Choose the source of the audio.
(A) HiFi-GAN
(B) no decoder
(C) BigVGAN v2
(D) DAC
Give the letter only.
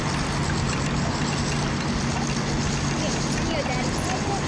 B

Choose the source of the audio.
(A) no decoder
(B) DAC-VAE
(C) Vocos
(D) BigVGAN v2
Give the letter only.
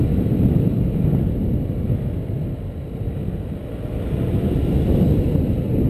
A